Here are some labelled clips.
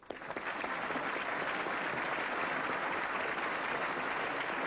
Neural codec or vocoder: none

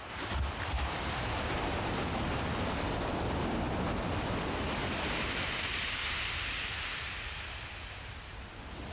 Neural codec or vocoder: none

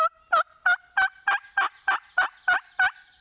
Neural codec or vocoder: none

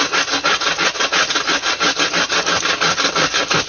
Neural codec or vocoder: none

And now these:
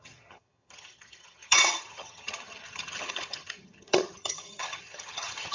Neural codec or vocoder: vocoder, HiFi-GAN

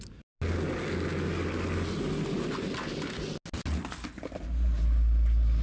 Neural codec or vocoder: none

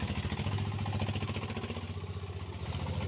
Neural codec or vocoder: none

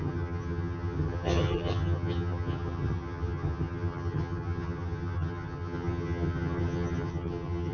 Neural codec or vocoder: vocoder, HiFi-GAN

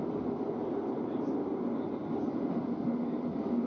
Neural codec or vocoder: none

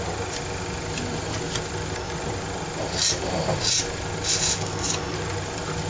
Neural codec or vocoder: none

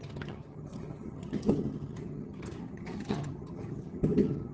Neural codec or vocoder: vocoder, HiFi-GAN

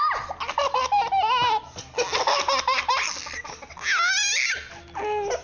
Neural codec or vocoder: none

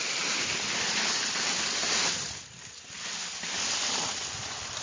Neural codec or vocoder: none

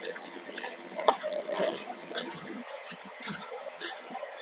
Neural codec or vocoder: vocoder, HiFi-GAN